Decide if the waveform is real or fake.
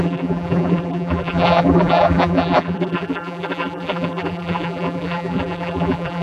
fake